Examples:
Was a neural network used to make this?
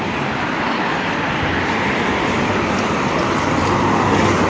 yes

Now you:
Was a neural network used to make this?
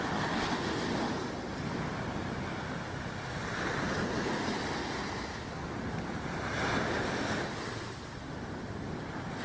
no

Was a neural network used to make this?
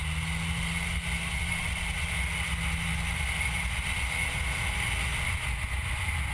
no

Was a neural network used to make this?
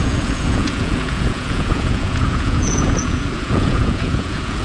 yes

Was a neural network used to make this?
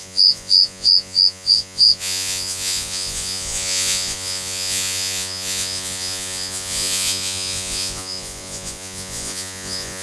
yes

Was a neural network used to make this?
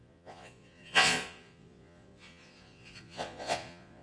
yes